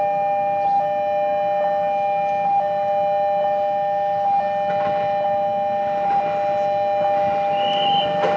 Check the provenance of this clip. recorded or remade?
recorded